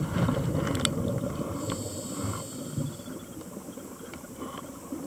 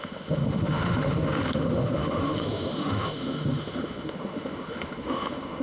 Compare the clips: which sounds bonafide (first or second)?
first